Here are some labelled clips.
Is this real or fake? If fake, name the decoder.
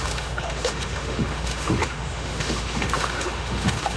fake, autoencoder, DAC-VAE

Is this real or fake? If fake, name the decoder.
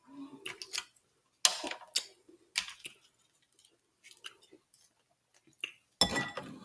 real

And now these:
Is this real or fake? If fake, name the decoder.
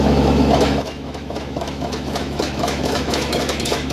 fake, autoencoder, DAC-VAE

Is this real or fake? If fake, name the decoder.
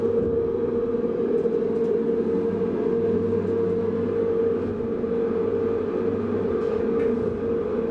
real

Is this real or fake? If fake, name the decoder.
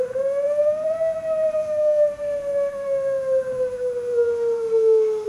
fake, autoencoder, DAC-VAE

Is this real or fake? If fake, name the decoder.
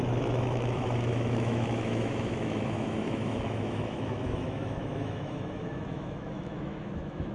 fake, autoencoder, DAC-VAE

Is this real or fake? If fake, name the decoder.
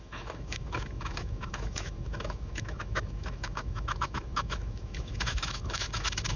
fake, autoencoder, DAC-VAE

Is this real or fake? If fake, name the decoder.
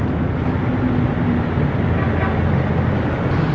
real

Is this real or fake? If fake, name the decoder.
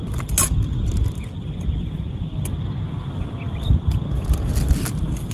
real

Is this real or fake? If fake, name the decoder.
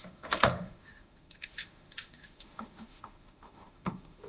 fake, autoencoder, DAC-VAE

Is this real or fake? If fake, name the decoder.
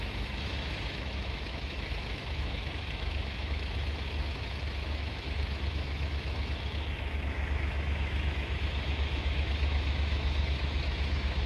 fake, autoencoder, DAC-VAE